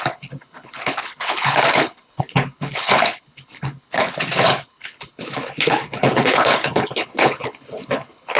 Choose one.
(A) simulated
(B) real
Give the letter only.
A